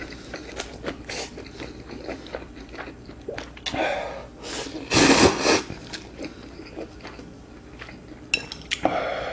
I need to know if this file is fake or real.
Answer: real